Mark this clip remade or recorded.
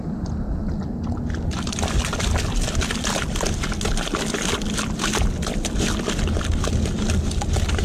recorded